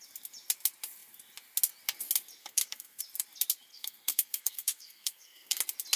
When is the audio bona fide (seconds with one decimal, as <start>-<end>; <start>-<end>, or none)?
0.0-2.4; 3.0-3.7; 5.6-6.0